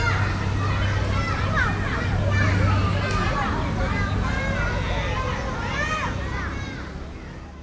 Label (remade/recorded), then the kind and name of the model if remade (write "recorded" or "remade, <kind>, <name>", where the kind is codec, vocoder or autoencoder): recorded